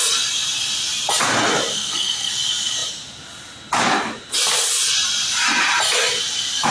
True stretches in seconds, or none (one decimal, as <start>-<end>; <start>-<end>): 0.0-1.7; 2.3-6.7